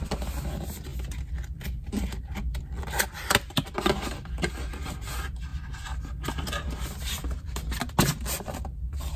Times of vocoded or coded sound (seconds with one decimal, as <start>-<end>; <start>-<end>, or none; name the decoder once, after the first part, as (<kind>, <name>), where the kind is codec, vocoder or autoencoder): none